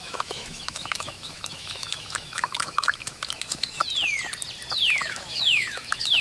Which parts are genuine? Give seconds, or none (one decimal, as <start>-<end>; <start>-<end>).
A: 3.8-5.0